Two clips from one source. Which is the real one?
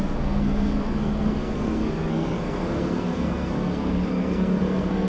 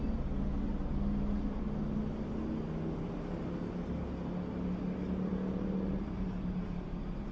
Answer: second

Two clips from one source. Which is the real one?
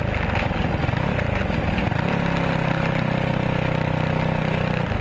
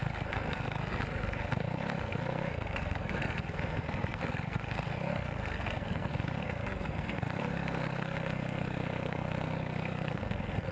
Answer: first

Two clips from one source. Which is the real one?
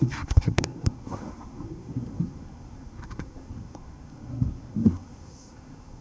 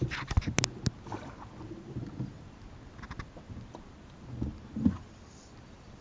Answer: second